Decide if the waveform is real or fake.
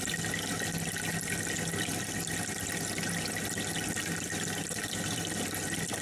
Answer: real